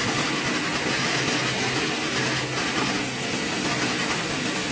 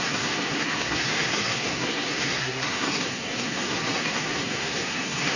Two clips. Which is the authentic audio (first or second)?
first